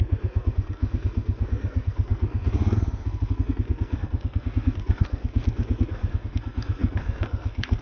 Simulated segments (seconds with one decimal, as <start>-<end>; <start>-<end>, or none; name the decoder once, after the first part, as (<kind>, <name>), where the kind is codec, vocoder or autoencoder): 0.0-7.8 (codec, SNAC)